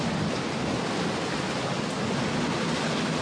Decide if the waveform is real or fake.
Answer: real